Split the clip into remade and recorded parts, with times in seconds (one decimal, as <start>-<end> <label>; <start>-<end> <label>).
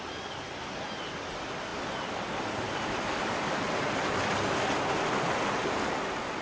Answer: 0.0-6.4 recorded